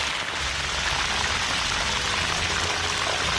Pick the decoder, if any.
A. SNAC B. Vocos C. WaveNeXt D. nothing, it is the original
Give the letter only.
D